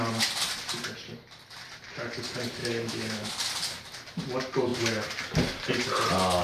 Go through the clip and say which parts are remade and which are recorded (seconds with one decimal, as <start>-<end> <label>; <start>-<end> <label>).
0.0-2.6 recorded; 2.6-3.3 remade; 3.3-6.4 recorded